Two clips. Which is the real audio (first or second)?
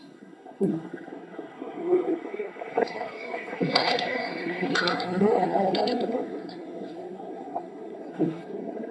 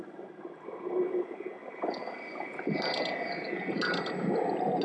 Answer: second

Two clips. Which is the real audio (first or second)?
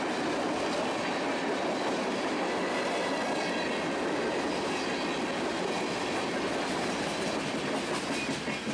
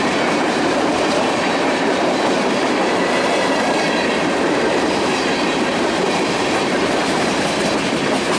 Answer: first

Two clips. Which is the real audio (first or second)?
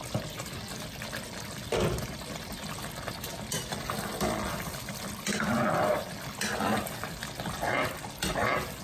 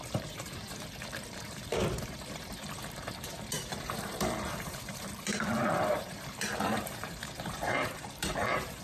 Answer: first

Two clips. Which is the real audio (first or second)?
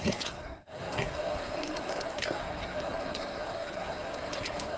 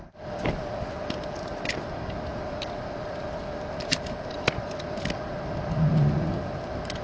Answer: second